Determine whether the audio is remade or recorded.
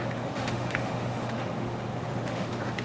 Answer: remade